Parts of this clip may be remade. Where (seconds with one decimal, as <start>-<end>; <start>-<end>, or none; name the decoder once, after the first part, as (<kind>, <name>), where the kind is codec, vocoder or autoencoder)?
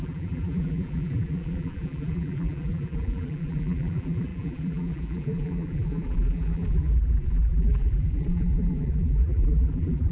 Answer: 0.0-10.1 (vocoder, BigVGAN v2)